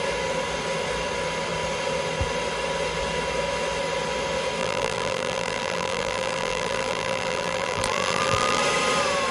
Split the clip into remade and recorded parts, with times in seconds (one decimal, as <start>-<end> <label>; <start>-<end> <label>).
0.0-4.6 recorded; 4.6-8.6 remade; 8.6-9.3 recorded